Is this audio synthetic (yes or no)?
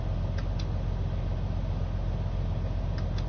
no